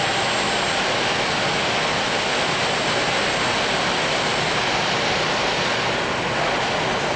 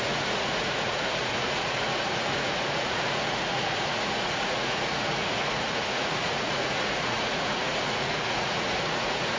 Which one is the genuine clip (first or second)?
first